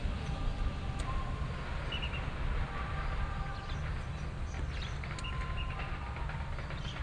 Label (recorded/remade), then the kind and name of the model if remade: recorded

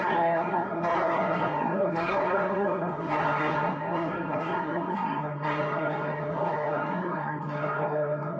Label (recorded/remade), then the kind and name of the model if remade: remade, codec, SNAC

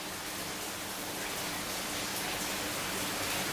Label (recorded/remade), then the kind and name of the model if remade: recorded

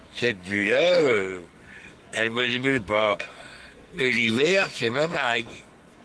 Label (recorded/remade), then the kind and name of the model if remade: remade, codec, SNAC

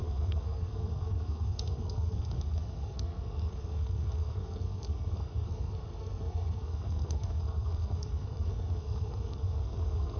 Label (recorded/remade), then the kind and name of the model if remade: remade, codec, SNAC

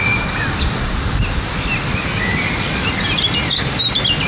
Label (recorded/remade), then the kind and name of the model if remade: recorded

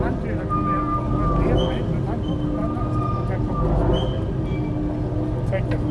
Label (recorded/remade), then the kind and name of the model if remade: recorded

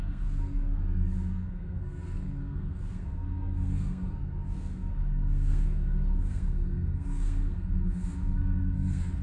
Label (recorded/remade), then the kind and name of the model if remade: remade, codec, SNAC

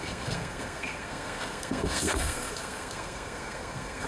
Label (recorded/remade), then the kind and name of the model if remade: remade, codec, SNAC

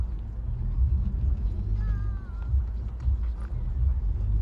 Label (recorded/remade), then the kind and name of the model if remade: recorded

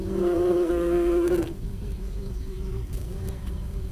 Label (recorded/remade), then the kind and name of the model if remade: remade, codec, SNAC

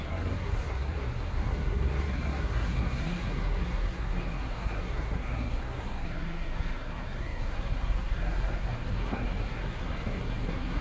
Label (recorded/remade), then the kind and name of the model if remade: remade, codec, SNAC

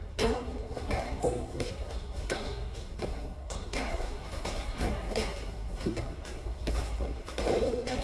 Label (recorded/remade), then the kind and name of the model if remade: remade, codec, SNAC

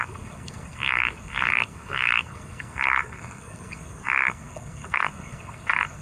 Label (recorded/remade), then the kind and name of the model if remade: remade, codec, SNAC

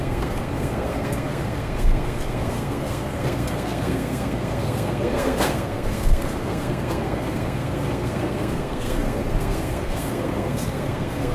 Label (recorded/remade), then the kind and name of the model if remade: remade, codec, SNAC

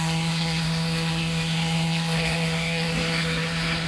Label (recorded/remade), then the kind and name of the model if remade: remade, codec, SNAC